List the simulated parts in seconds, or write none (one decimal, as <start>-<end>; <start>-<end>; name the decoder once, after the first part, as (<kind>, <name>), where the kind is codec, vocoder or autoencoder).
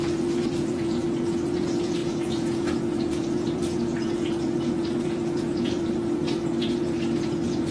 0.0-7.7 (vocoder, Vocos)